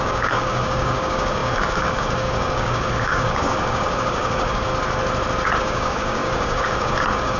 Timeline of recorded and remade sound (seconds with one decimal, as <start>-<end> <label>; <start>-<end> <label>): 0.0-4.7 remade; 4.7-5.6 recorded; 5.6-7.4 remade